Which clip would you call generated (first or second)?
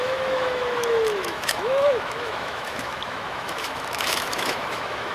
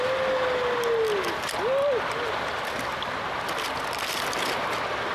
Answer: first